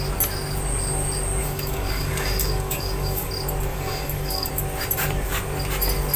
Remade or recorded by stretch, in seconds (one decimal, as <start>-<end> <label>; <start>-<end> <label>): 0.0-1.4 recorded; 1.4-3.3 remade; 3.3-3.7 recorded; 3.7-4.5 remade; 4.5-6.2 recorded